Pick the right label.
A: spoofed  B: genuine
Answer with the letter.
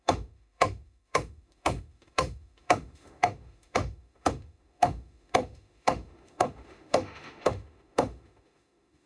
A